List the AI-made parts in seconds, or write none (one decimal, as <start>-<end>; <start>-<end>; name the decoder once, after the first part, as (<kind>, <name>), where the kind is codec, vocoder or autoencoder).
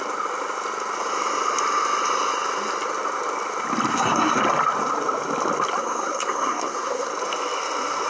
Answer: 3.9-4.4 (codec, SNAC); 5.8-7.1